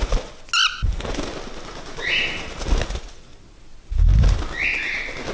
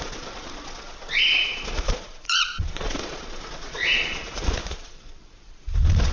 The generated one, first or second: second